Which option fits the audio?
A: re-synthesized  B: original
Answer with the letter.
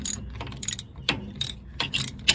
B